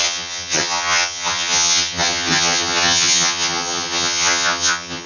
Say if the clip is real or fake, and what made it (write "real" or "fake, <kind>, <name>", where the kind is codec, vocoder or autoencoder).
fake, vocoder, HiFi-GAN